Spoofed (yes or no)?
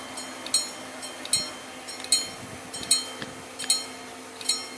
no